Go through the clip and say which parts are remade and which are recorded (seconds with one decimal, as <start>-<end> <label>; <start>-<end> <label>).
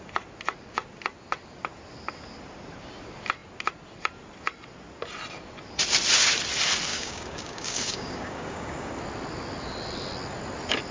0.0-6.9 recorded; 6.9-8.9 remade; 8.9-10.9 recorded